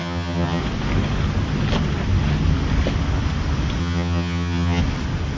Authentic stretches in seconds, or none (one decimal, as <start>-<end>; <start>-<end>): 0.6-3.8; 4.8-5.4